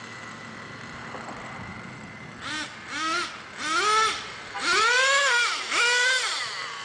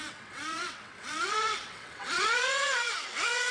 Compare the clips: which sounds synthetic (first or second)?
second